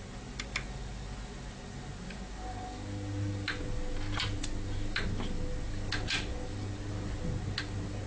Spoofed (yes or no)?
no